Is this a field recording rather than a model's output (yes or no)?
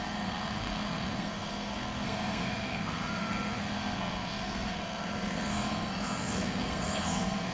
no